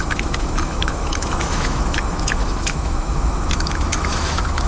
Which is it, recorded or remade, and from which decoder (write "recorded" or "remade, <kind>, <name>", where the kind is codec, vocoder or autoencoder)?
remade, autoencoder, DAC-VAE